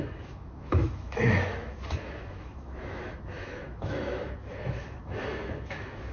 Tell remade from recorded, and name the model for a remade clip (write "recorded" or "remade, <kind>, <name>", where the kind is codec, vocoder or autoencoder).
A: remade, autoencoder, DAC-VAE